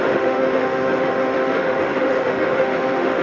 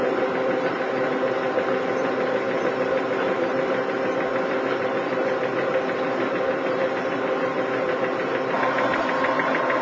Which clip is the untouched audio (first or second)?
second